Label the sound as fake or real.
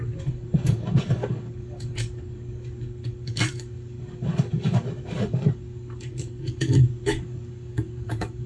fake